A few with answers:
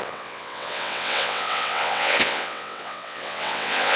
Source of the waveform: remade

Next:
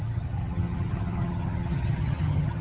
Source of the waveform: remade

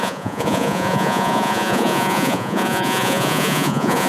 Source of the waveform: remade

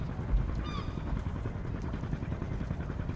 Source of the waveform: recorded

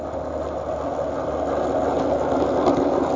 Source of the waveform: recorded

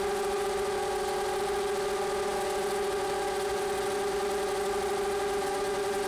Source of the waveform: recorded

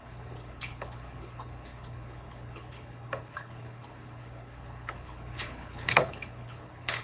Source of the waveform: remade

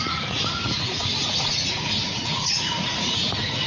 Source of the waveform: remade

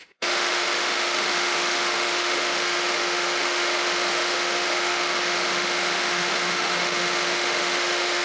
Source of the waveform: remade